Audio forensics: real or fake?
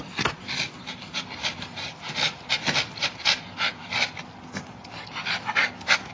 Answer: real